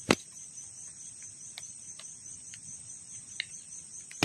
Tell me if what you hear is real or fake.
real